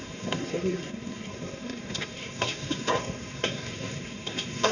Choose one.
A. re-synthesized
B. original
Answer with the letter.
A